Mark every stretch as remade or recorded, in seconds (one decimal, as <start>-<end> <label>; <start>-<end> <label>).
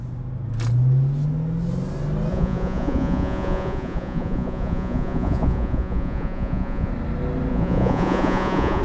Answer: 0.0-2.3 recorded; 2.3-6.9 remade; 6.9-7.5 recorded; 7.5-8.8 remade